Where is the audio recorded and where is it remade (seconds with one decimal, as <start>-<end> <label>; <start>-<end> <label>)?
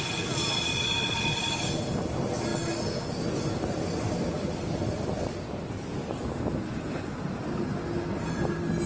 0.0-8.9 recorded